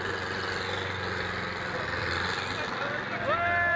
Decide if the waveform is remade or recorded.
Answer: recorded